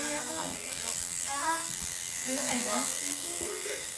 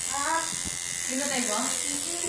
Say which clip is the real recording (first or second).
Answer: second